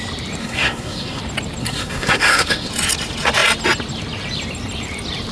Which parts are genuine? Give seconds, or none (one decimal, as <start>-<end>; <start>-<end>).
0.0-0.4; 1.2-1.6; 2.7-5.3